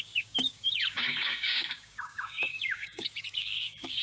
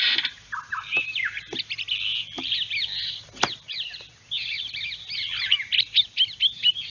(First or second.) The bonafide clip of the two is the second